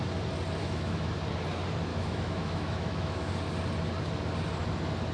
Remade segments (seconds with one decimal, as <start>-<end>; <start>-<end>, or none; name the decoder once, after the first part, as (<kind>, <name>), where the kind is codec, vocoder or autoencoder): 0.6-1.1 (autoencoder, DAC-VAE); 1.9-3.3